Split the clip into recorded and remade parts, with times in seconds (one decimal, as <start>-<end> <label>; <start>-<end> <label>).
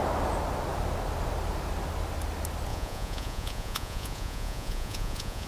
0.0-2.7 recorded; 2.7-5.5 remade